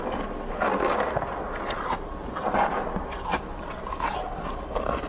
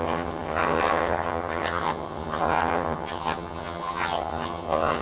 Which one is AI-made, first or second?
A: second